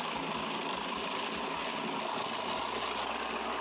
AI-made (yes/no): no